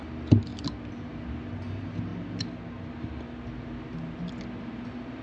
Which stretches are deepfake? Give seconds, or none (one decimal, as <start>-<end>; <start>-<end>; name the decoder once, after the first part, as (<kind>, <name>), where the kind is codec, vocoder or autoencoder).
none

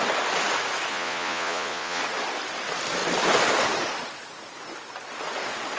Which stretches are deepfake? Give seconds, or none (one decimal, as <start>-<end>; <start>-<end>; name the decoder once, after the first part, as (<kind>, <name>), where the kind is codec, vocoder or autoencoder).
0.9-2.0 (vocoder, Vocos)

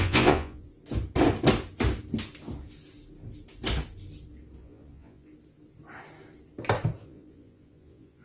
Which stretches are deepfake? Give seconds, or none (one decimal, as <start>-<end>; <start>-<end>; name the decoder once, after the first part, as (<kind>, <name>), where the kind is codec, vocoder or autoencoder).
0.0-0.7 (vocoder, Vocos); 4.6-5.3; 7.0-8.2

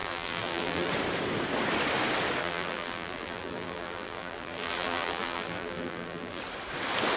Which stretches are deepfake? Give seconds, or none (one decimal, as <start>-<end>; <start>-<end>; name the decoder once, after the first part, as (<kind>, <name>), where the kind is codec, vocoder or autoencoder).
0.0-0.9 (vocoder, BigVGAN v2); 2.4-6.4

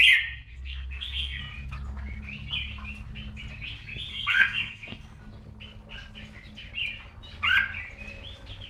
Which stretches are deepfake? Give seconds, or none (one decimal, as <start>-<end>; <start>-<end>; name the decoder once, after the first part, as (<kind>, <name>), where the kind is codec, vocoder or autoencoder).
0.5-1.4 (codec, SNAC); 4.1-5.2

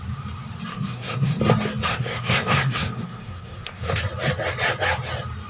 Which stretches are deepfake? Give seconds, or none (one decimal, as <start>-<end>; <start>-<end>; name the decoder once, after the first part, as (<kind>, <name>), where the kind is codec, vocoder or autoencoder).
0.7-1.4 (codec, SNAC); 1.9-4.0